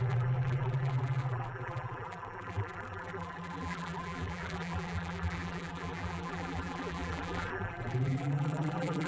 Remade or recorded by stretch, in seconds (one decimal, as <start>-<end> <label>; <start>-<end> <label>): 0.0-9.1 remade